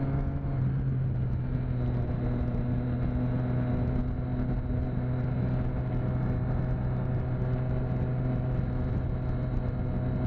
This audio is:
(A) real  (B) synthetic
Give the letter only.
A